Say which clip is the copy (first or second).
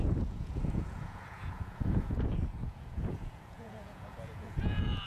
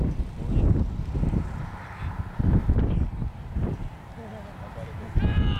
first